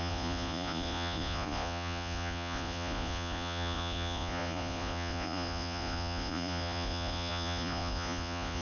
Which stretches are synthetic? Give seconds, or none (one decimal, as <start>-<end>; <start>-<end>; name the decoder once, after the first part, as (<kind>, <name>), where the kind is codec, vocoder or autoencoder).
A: 0.0-8.6 (vocoder, Vocos)